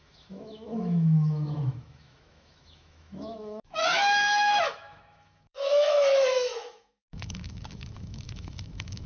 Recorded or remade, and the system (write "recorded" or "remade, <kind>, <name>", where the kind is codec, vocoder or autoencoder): remade, autoencoder, DAC-VAE